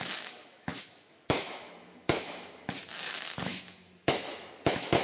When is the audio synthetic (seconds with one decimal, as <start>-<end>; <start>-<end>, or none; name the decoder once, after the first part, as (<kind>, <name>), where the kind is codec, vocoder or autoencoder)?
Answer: 0.0-5.0 (autoencoder, DAC-VAE)